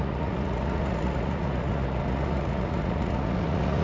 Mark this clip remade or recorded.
remade